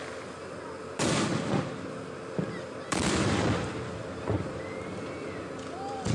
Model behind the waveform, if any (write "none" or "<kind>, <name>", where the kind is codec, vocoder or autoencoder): none